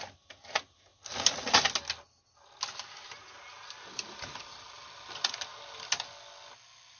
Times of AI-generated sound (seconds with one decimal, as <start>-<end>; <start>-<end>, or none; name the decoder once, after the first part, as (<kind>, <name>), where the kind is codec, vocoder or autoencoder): none